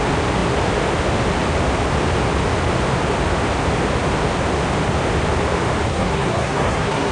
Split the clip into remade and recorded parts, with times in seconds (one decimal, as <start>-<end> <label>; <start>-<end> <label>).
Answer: 0.0-5.9 recorded; 5.9-7.1 remade